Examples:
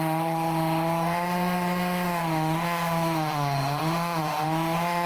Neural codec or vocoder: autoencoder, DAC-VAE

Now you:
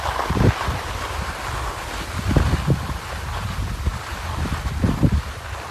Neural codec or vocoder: none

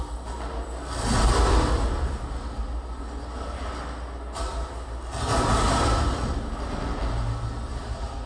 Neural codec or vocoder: none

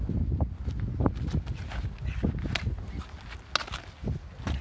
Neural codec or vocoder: none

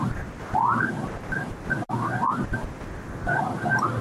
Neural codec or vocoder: none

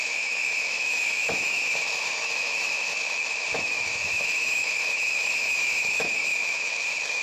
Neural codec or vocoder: autoencoder, DAC-VAE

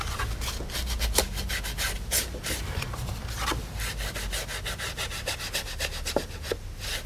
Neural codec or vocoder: none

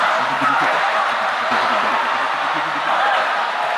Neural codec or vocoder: none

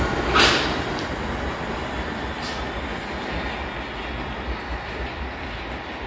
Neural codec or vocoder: none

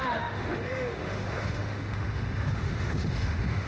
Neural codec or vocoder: autoencoder, DAC-VAE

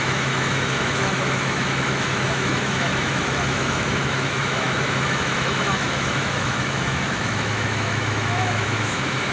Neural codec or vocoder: autoencoder, DAC-VAE